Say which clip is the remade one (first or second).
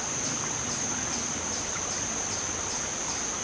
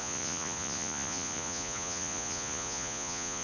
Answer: second